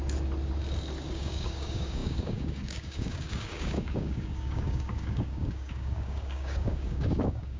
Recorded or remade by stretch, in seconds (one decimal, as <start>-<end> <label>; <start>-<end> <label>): 0.0-1.1 recorded; 1.1-7.6 remade